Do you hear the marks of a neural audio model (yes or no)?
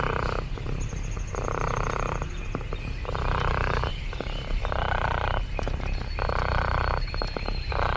no